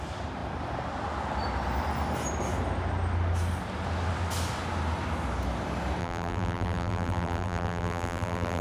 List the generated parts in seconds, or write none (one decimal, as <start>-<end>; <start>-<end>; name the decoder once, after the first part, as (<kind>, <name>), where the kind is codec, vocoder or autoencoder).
6.0-8.6 (vocoder, BigVGAN v2)